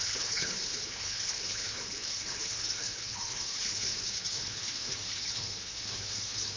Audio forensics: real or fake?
fake